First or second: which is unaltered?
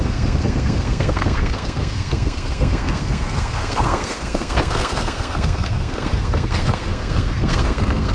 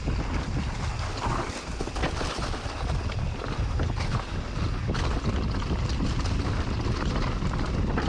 second